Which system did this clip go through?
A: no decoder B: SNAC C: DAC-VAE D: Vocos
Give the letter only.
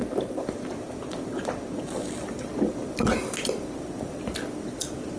A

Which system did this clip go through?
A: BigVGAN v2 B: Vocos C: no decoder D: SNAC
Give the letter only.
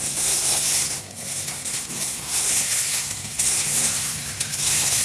D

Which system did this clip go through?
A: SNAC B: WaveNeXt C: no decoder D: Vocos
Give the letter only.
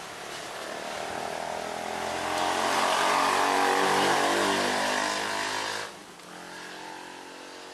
C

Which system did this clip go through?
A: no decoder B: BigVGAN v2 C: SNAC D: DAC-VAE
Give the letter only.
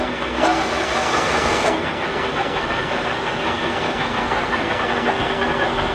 C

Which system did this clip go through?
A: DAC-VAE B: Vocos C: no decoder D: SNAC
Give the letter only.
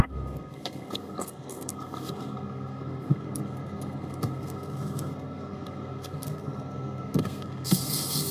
D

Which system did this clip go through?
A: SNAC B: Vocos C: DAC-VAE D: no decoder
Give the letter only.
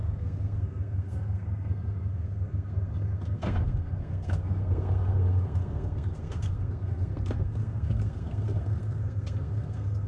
A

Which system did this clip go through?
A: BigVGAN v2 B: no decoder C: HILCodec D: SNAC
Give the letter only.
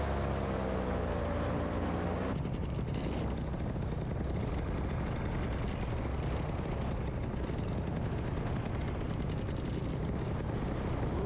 B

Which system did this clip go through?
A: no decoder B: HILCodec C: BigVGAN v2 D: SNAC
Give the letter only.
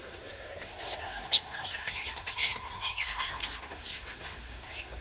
D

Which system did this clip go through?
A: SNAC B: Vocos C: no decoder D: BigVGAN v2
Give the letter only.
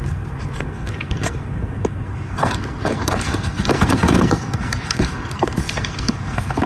A